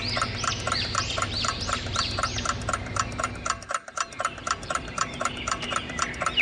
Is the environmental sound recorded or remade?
recorded